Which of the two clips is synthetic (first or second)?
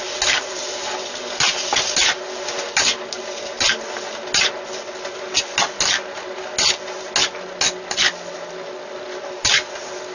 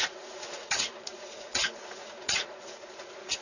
second